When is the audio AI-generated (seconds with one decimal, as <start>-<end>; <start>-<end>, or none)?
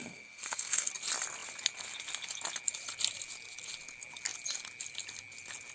0.0-0.9